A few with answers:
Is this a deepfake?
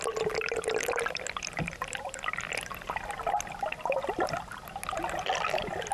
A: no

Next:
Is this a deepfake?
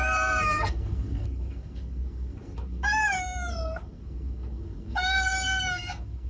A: yes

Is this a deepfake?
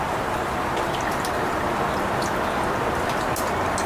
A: no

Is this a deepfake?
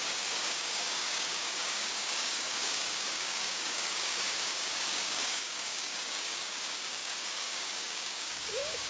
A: yes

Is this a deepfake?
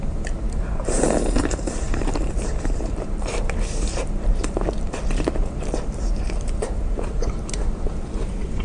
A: yes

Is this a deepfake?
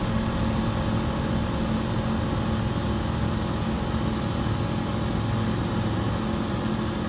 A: no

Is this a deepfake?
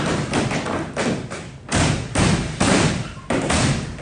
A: yes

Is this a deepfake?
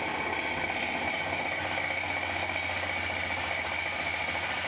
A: no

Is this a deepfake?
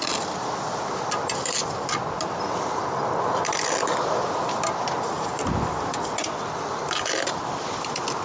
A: no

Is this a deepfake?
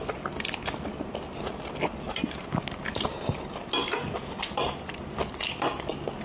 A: no